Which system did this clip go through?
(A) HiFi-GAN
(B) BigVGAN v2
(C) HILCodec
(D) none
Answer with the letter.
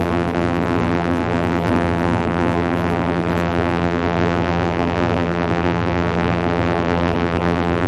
B